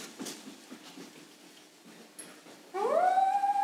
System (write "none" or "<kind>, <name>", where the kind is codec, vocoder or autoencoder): none